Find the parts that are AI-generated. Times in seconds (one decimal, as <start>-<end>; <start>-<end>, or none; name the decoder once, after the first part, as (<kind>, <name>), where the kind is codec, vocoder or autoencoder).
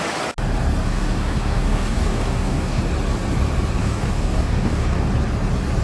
0.8-2.8 (codec, DAC); 3.8-5.1